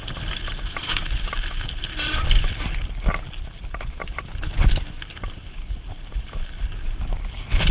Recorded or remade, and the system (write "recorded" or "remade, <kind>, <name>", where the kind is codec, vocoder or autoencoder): remade, vocoder, BigVGAN v2